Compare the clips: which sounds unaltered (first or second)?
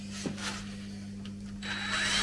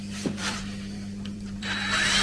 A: first